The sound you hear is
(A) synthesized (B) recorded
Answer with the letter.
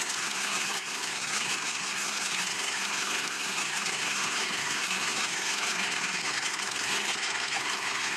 A